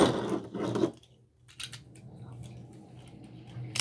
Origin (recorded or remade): recorded